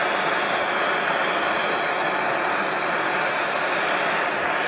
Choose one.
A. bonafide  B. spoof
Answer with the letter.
A